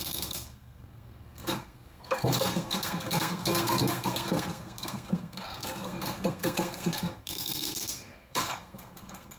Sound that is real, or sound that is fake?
fake